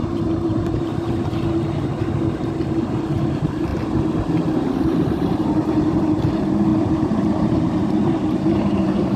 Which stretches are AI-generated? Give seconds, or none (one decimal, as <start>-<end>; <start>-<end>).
0.0-0.9; 2.9-3.7; 4.8-9.2